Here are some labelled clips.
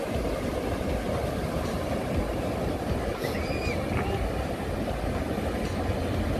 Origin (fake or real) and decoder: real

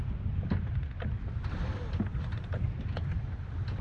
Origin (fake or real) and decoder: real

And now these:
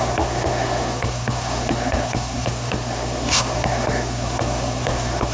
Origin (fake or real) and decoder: fake, codec, SNAC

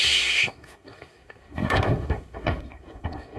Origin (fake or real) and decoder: fake, codec, SNAC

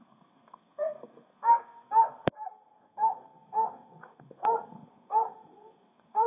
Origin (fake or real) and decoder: fake, codec, SNAC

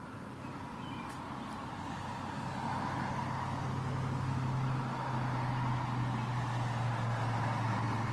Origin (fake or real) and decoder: real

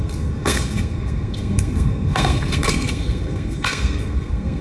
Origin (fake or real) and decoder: fake, codec, SNAC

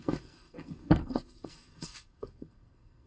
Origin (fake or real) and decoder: fake, codec, SNAC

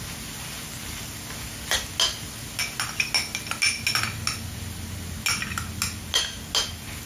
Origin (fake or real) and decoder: real